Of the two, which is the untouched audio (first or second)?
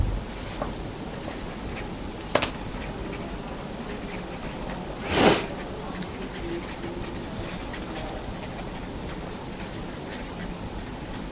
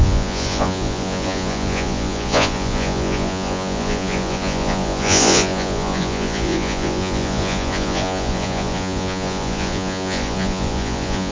first